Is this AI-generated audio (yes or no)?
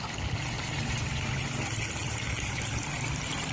no